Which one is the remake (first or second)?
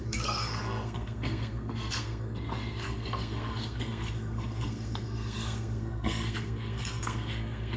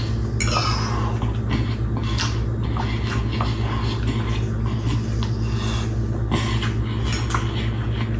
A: first